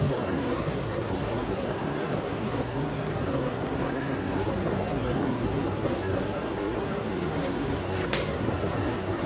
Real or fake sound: fake